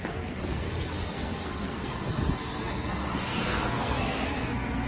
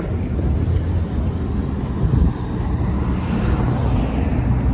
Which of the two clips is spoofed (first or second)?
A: first